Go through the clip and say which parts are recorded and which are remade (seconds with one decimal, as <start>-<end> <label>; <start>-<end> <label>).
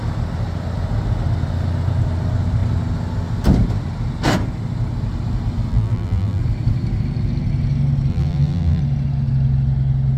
0.0-5.7 recorded; 5.7-6.4 remade; 6.4-8.1 recorded; 8.1-8.8 remade; 8.8-10.2 recorded